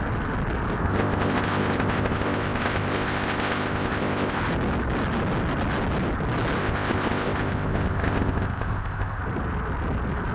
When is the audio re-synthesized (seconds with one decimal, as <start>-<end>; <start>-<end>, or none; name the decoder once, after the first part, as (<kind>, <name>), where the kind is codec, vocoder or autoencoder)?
0.8-4.4 (codec, ZipCodec); 6.6-9.2